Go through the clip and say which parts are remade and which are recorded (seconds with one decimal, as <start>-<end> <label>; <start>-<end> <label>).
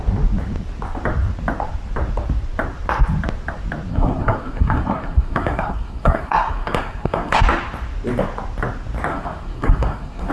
0.0-3.9 recorded; 3.9-7.4 remade; 7.4-9.1 recorded; 9.1-10.3 remade